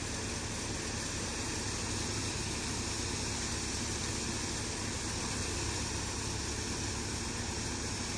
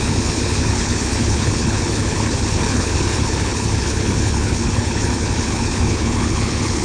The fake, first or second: second